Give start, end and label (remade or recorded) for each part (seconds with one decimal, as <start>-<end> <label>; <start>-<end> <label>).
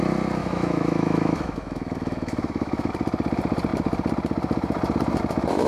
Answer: 0.0-0.4 recorded; 0.4-2.9 remade; 2.9-5.7 recorded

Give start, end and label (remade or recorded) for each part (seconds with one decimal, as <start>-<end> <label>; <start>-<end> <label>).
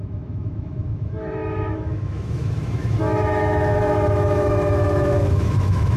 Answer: 0.0-6.0 remade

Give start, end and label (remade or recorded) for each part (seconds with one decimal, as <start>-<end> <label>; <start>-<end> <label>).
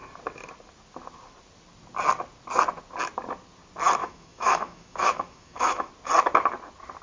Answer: 0.0-4.0 recorded; 4.0-5.9 remade; 5.9-7.0 recorded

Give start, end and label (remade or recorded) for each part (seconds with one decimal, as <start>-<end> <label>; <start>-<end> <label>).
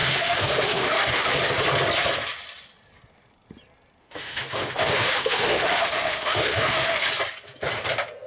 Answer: 0.0-1.3 remade; 1.3-4.0 recorded; 4.0-7.1 remade; 7.1-8.3 recorded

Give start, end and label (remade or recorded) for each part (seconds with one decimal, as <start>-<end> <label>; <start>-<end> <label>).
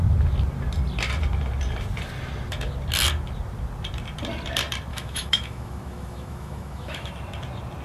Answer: 0.0-4.9 recorded; 4.9-7.1 remade; 7.1-7.8 recorded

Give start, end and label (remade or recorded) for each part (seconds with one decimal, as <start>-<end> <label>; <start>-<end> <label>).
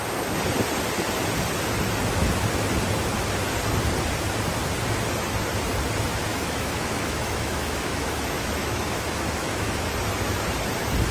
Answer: 0.0-6.3 recorded; 6.3-9.8 remade; 9.8-11.1 recorded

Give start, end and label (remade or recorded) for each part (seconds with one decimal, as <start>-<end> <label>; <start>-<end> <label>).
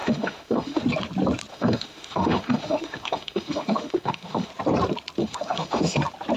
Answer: 0.0-0.8 remade; 0.8-1.5 recorded; 1.5-4.5 remade; 4.5-5.2 recorded; 5.2-6.0 remade; 6.0-6.4 recorded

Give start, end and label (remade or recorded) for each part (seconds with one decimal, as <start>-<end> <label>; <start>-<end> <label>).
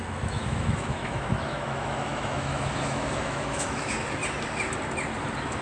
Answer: 0.0-4.2 remade; 4.2-5.6 recorded